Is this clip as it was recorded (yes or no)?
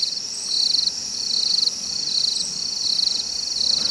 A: yes